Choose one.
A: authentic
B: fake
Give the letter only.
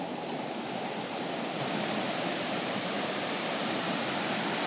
B